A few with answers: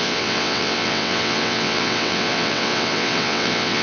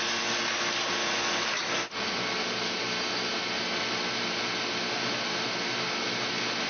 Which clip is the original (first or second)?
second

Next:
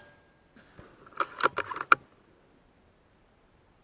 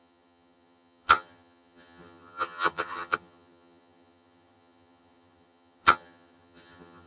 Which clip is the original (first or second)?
first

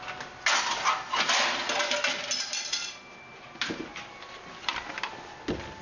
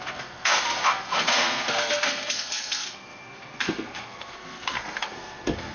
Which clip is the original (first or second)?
first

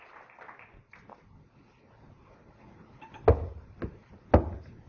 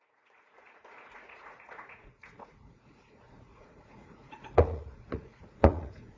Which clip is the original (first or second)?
first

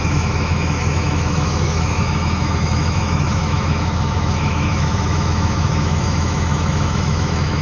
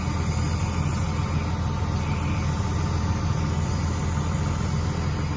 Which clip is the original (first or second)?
second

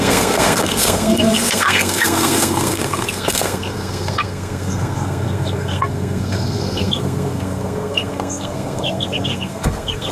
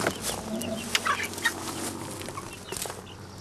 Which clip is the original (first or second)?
second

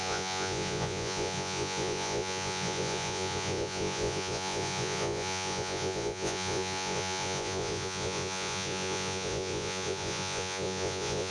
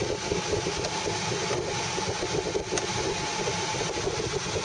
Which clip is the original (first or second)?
second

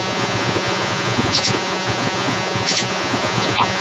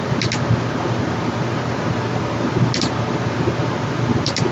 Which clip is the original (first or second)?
second